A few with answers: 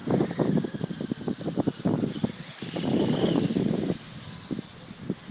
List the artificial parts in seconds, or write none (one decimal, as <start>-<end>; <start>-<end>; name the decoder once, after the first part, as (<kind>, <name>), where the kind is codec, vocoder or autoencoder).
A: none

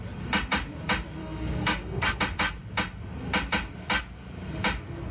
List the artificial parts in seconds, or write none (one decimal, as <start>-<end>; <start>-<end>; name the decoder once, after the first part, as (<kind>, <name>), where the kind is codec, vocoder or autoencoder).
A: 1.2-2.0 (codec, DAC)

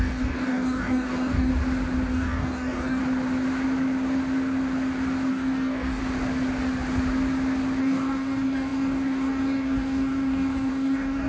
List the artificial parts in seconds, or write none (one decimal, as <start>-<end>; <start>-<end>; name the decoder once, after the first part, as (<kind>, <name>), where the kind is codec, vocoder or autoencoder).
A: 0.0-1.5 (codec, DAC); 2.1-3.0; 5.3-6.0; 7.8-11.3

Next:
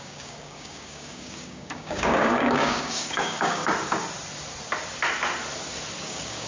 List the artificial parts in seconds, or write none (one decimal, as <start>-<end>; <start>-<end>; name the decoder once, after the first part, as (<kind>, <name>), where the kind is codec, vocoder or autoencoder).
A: 0.0-3.6 (codec, DAC); 6.0-6.5

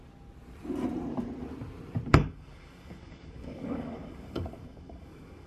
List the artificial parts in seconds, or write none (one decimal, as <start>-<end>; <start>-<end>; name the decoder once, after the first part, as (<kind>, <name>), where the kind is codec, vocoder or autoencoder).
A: 2.1-5.5 (codec, DAC)